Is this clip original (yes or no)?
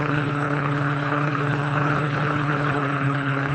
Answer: no